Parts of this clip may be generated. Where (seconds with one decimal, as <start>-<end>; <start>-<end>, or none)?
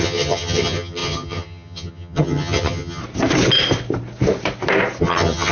0.0-3.0; 5.0-5.5